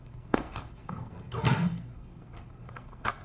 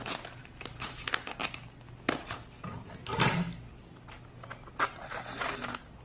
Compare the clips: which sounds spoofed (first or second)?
first